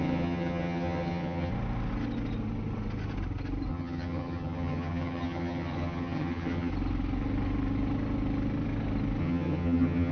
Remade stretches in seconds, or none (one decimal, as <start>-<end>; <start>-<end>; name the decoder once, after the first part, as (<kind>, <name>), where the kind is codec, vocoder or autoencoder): 0.0-1.5 (vocoder, HiFi-GAN); 3.7-6.7; 9.2-10.1